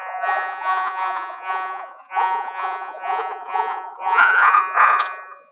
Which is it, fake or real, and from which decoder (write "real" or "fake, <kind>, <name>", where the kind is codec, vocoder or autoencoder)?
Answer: fake, vocoder, Vocos